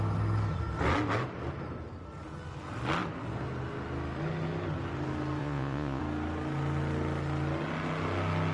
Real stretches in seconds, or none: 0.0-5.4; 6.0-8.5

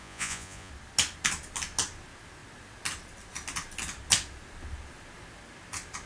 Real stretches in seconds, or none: 0.7-6.1

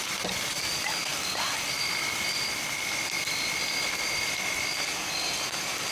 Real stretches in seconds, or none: 0.0-5.9